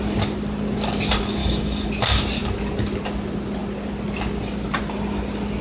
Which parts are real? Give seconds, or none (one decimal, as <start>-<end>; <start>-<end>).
0.0-1.4; 1.9-5.6